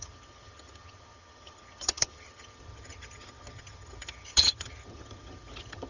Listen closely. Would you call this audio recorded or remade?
remade